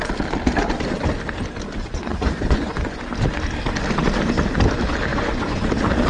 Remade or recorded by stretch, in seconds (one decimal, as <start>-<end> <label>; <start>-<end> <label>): 0.0-1.8 recorded; 1.8-3.0 remade; 3.0-5.1 recorded; 5.1-5.6 remade; 5.6-6.1 recorded